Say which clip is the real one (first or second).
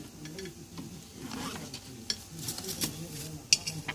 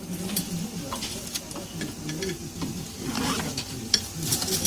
first